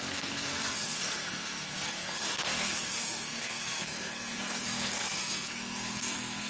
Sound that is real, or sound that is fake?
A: fake